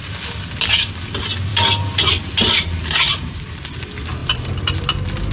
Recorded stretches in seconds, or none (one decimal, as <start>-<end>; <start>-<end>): 0.0-1.5; 3.5-4.2; 4.8-5.3

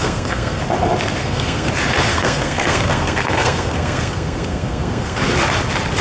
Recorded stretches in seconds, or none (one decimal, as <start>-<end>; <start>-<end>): 0.6-1.2; 1.7-2.1; 5.2-6.0

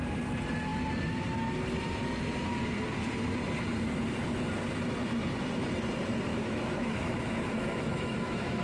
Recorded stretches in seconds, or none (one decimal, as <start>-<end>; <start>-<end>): 0.0-6.3

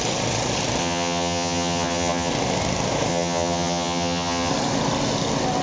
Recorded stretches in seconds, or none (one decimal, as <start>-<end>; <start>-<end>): 0.0-0.8; 2.3-3.1; 4.5-5.6

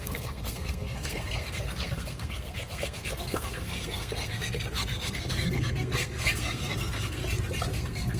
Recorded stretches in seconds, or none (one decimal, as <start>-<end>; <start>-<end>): 7.2-7.7